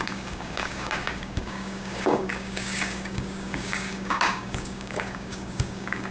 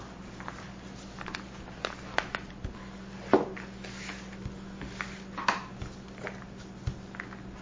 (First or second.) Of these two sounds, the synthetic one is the first